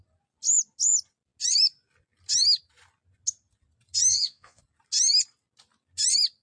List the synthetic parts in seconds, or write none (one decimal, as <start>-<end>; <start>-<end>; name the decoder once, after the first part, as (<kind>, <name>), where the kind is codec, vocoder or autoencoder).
4.1-4.6 (vocoder, Vocos)